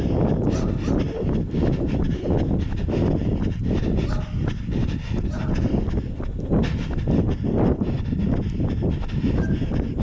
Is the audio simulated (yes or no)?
no